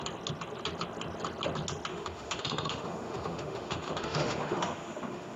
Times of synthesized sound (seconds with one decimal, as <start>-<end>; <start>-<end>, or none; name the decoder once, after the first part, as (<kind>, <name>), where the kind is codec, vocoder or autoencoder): 1.9-5.4 (autoencoder, DAC-VAE)